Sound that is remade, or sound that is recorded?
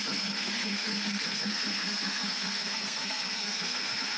remade